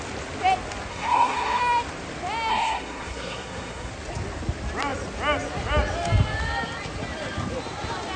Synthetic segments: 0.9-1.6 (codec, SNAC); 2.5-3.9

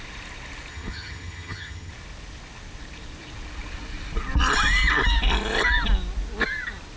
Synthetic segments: 0.7-1.9 (vocoder, HiFi-GAN)